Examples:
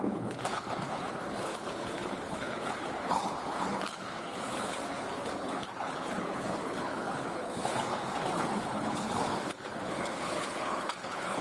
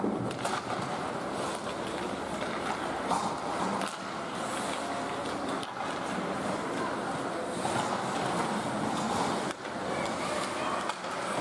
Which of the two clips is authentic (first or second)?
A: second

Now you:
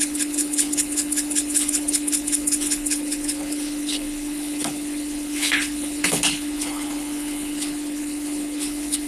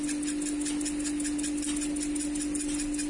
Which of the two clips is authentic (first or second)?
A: second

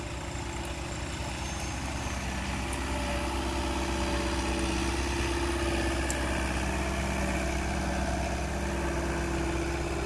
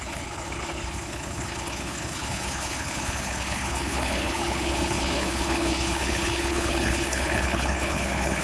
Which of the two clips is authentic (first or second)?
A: first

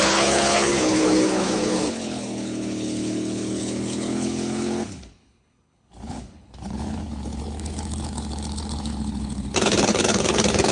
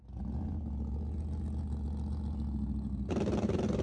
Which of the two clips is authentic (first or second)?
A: second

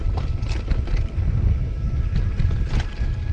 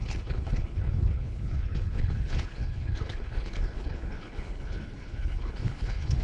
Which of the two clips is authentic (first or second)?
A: first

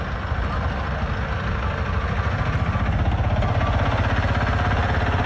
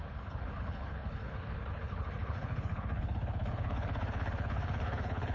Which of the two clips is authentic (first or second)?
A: first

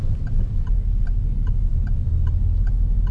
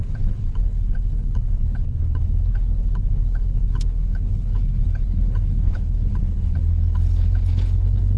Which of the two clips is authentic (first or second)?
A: first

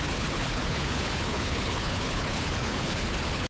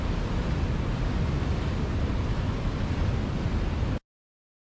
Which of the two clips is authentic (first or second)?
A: second